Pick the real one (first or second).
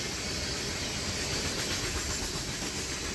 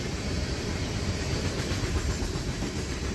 first